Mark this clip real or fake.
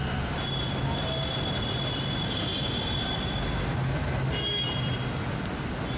real